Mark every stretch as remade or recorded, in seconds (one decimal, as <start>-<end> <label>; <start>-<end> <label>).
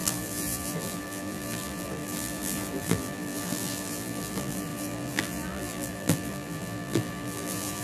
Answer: 0.0-7.8 remade